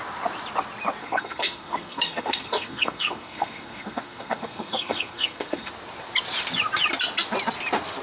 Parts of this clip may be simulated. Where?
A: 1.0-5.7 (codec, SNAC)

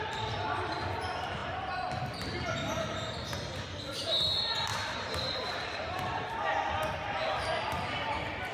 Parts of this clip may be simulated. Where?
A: 4.7-6.0 (vocoder, BigVGAN v2)